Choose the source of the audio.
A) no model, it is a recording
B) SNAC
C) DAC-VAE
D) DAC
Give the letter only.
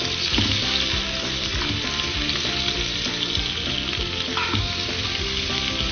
A